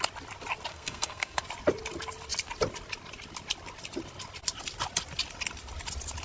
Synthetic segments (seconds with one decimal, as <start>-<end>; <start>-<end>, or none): 0.7-1.4